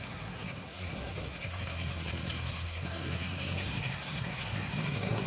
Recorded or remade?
remade